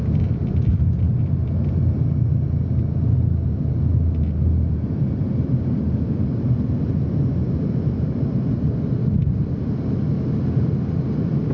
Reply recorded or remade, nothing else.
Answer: recorded